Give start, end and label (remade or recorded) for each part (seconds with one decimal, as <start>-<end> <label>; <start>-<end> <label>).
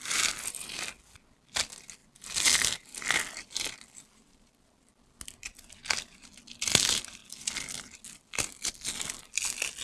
0.0-9.8 recorded